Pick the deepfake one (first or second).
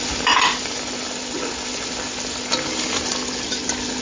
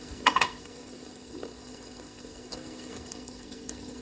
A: second